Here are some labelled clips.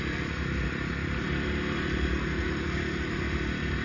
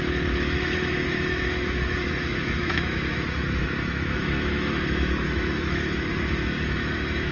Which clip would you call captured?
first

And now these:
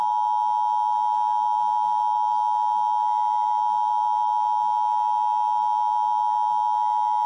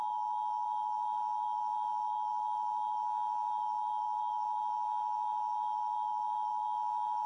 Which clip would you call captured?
first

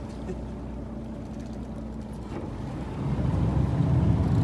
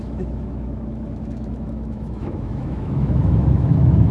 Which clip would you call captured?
first